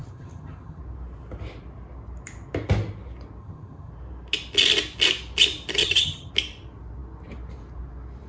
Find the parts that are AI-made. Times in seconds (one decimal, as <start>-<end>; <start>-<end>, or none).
0.0-0.8; 3.4-3.9; 5.8-6.3